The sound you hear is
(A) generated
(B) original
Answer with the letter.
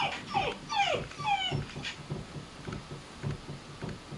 B